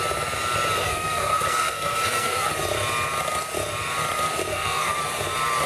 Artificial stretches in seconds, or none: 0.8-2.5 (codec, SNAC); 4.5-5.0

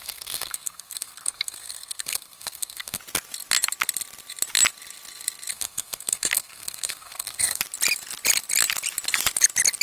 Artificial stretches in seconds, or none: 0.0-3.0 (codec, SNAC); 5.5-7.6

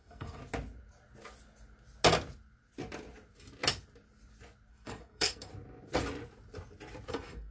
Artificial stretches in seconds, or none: 0.0-0.4 (codec, SNAC); 4.7-5.5; 7.1-7.5

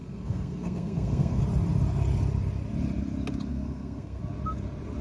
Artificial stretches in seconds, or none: 0.0-1.4 (codec, SNAC); 3.5-4.2